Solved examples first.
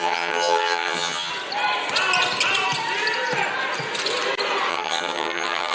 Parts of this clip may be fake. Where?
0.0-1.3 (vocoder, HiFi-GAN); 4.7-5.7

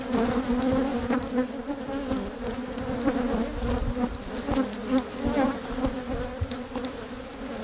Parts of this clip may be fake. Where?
none

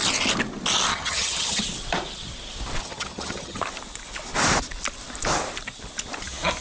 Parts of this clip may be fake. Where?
0.9-1.6 (vocoder, HiFi-GAN); 2.8-3.6

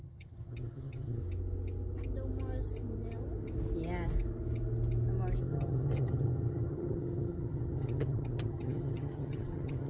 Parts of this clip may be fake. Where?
0.0-1.2 (vocoder, HiFi-GAN); 5.4-9.9

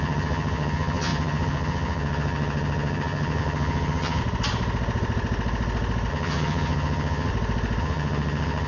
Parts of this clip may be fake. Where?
0.0-4.2 (vocoder, HiFi-GAN); 6.1-7.3; 7.8-8.7

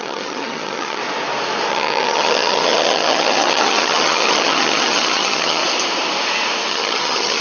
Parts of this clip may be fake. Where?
0.0-1.0 (vocoder, HiFi-GAN); 1.7-5.6; 6.7-7.4

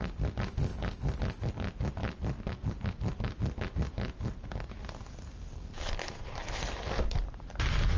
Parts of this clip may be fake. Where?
none